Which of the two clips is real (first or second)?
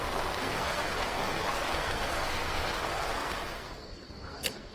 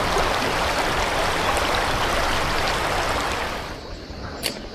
second